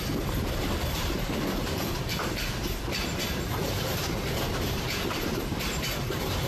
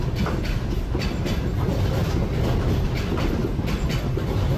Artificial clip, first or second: first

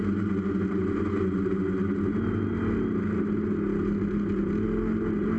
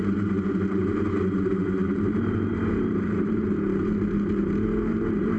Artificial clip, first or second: second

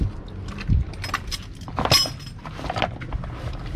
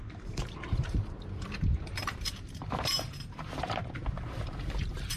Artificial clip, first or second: second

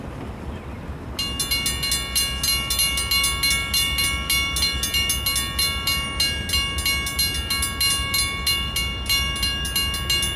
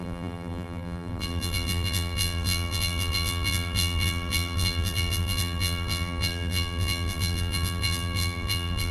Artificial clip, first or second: second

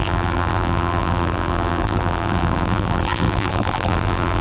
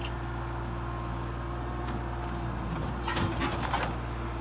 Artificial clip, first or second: first